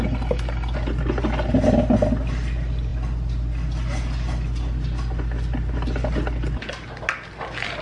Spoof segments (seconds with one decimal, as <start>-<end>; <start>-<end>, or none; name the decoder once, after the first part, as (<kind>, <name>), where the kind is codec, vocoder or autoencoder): none